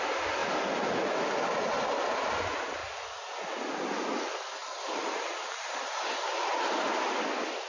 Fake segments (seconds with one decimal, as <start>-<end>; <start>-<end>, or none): none